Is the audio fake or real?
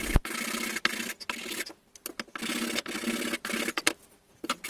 real